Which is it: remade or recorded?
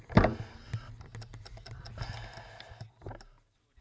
recorded